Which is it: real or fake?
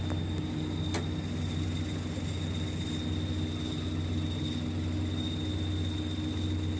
real